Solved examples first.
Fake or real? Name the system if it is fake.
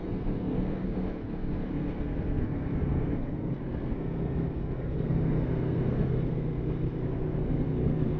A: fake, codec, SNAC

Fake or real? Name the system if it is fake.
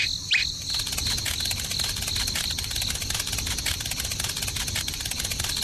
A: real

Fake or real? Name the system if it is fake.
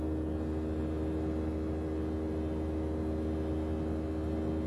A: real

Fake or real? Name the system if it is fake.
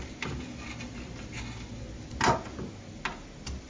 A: real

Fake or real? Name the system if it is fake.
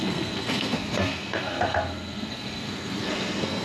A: fake, codec, SNAC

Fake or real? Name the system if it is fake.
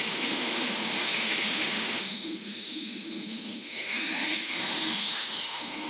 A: fake, autoencoder, DAC-VAE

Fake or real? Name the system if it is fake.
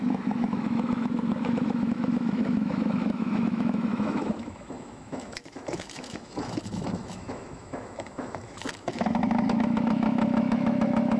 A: fake, autoencoder, DAC-VAE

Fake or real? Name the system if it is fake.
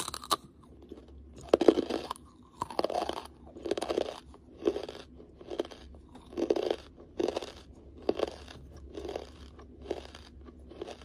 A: real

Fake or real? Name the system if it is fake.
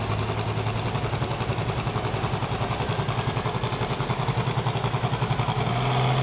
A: real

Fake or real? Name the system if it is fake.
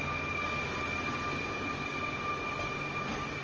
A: real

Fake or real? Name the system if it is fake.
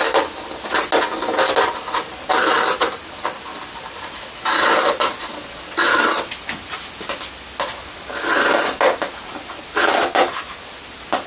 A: real